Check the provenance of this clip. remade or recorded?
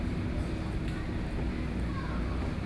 recorded